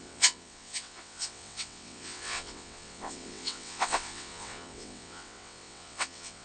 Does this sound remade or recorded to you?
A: remade